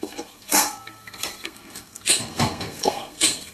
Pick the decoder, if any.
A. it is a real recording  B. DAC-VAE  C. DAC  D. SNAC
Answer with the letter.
D